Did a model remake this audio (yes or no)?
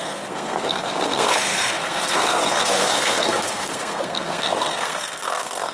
yes